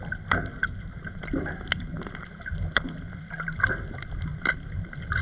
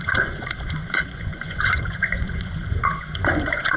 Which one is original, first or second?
first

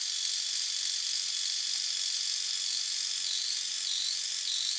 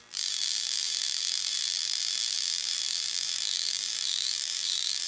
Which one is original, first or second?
first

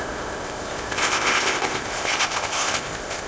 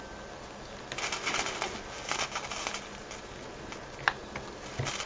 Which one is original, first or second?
second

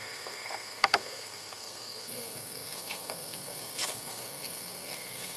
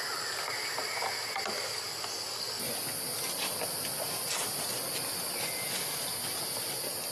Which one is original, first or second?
second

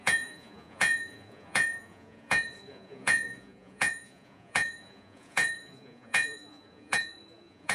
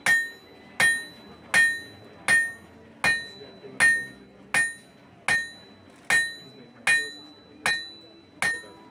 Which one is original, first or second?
second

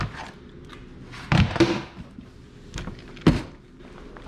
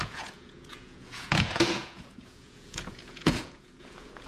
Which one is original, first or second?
first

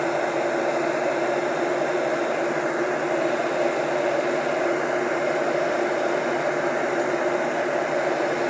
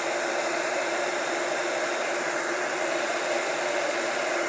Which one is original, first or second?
first